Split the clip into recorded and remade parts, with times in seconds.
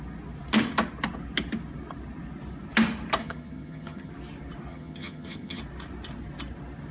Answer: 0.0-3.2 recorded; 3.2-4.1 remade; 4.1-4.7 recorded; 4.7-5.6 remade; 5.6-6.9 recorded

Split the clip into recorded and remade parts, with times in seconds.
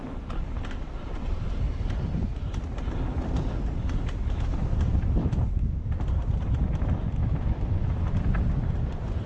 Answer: 0.0-5.2 recorded; 5.2-5.9 remade; 5.9-7.2 recorded; 7.2-8.1 remade; 8.1-9.3 recorded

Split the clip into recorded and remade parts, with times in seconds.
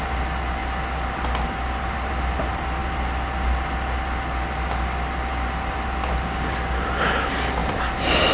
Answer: 0.0-8.3 recorded